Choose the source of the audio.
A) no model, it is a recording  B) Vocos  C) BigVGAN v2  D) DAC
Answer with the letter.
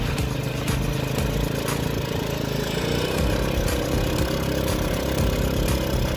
A